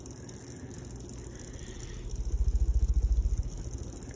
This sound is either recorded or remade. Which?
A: recorded